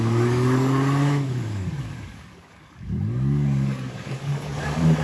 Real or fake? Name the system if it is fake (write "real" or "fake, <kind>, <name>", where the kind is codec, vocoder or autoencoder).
fake, codec, DAC